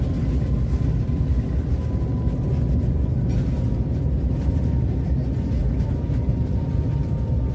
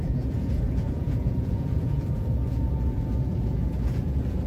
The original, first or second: first